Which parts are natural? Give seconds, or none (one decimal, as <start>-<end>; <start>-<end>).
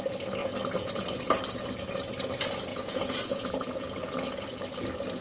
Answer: 0.0-2.7; 4.0-5.2